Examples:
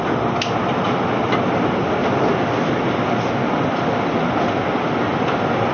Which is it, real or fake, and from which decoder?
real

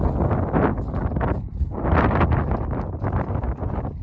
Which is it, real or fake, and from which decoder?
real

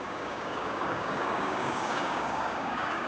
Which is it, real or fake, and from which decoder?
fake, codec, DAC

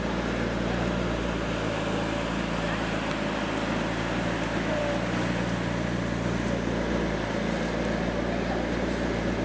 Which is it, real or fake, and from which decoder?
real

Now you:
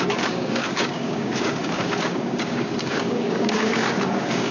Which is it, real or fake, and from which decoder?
fake, codec, DAC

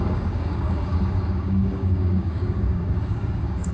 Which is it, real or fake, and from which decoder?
fake, codec, DAC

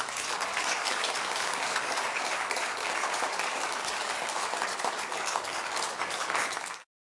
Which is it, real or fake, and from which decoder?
fake, codec, DAC